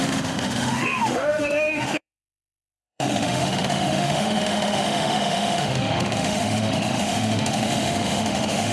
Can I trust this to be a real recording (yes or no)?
no